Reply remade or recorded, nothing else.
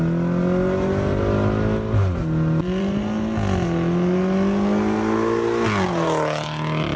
recorded